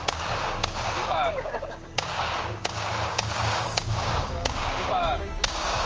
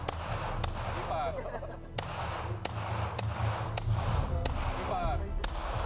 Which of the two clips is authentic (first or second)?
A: second